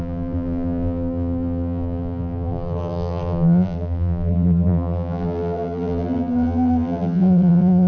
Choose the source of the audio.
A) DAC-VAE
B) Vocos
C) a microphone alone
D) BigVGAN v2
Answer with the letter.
D